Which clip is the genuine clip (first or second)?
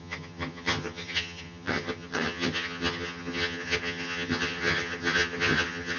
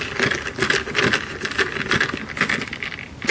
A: second